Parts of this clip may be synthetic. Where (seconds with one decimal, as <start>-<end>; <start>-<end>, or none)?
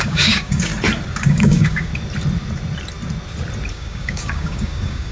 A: 0.0-0.7; 1.2-1.9; 3.7-5.1